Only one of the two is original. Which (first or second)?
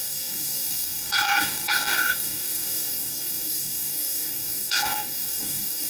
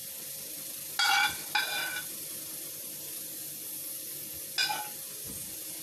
second